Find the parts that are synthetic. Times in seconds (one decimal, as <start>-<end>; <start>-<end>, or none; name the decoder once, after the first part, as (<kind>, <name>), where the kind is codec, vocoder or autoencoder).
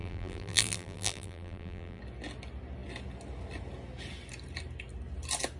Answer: 0.0-2.0 (vocoder, BigVGAN v2)